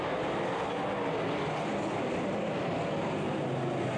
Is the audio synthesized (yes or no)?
no